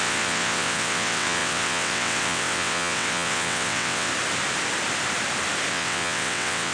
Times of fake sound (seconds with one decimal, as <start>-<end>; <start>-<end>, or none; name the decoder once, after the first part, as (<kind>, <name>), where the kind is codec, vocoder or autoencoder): 0.0-4.1 (vocoder, WaveNeXt); 5.7-6.7